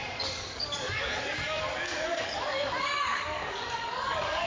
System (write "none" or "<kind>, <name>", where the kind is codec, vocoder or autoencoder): codec, DAC